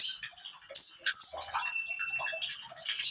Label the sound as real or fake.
real